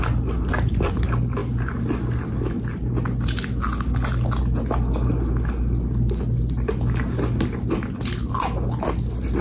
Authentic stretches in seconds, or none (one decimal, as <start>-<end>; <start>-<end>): 0.0-9.4